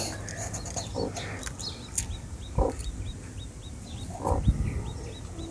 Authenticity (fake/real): real